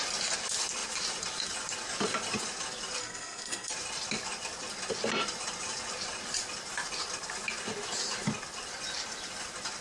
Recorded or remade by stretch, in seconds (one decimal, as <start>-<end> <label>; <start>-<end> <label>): 0.0-3.0 recorded; 3.0-3.7 remade; 3.7-9.8 recorded